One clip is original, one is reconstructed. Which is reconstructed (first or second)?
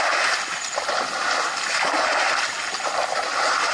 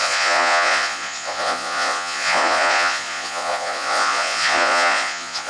second